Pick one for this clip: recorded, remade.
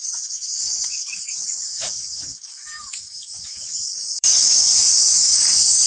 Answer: remade